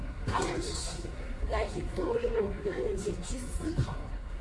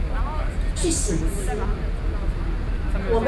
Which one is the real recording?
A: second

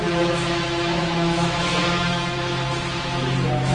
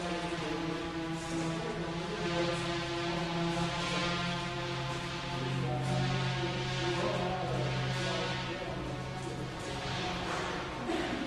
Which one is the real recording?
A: second